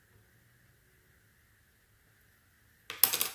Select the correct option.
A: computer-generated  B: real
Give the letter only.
B